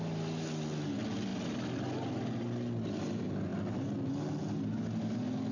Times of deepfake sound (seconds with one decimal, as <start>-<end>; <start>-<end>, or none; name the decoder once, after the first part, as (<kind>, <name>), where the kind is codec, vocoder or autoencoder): none